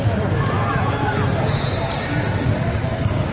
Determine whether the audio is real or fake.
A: real